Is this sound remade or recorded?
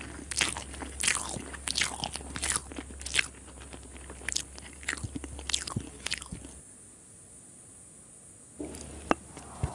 recorded